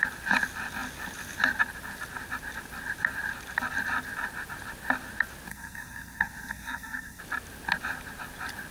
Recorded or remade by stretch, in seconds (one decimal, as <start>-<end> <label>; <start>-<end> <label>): 0.0-5.5 recorded; 5.5-7.2 remade; 7.2-8.7 recorded